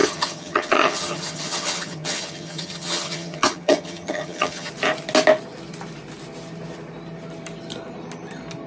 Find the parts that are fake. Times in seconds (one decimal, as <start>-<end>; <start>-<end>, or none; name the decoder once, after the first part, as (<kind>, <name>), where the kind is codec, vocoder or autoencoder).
0.0-4.7 (vocoder, HiFi-GAN)